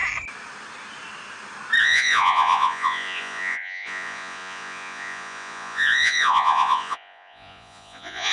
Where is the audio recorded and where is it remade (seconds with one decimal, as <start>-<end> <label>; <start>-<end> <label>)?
0.0-1.8 recorded; 1.8-8.3 remade